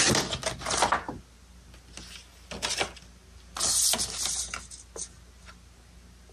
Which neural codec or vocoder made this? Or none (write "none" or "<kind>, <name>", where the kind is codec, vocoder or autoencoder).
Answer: none